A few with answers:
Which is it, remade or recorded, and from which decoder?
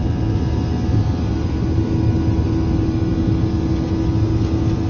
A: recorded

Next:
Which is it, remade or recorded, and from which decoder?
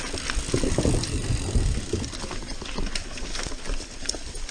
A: recorded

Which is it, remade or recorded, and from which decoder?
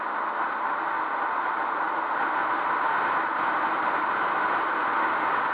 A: recorded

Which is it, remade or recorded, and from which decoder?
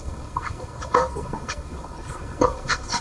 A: remade, codec, SNAC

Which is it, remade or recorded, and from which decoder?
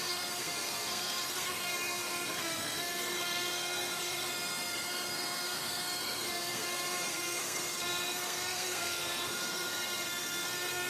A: remade, codec, SNAC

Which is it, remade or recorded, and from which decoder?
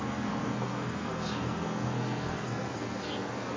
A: remade, codec, SNAC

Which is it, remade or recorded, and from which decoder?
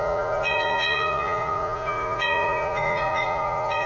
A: remade, vocoder, Vocos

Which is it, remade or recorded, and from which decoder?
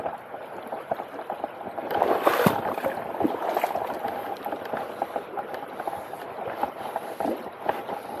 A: recorded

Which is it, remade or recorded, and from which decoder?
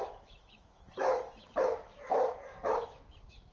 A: remade, autoencoder, DAC-VAE